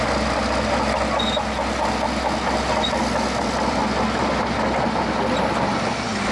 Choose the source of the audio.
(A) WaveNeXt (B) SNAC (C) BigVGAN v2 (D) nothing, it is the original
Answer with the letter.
D